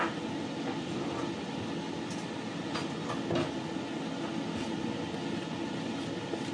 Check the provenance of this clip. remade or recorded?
recorded